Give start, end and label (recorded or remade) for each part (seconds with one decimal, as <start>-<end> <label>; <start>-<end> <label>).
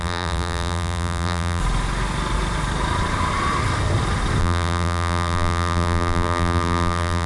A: 0.0-1.6 remade; 1.6-4.4 recorded; 4.4-7.3 remade